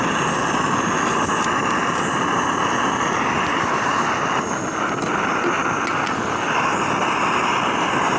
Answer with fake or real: real